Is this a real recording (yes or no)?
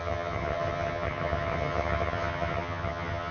no